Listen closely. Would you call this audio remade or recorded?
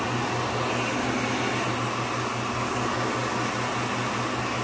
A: recorded